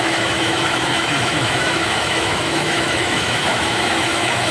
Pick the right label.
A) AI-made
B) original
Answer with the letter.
A